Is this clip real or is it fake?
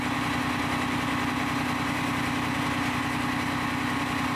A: real